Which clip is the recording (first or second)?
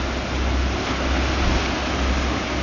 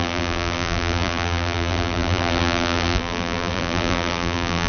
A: first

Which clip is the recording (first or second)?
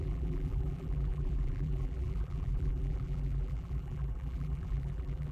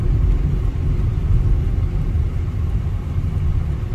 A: second